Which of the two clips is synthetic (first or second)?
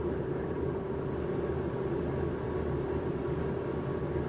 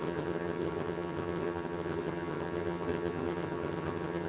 second